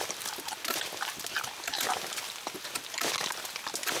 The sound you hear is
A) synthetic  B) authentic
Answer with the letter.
B